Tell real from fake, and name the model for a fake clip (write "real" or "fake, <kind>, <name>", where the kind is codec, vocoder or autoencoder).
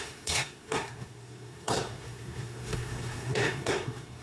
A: fake, codec, SNAC